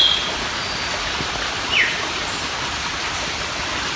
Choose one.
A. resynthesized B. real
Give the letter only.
B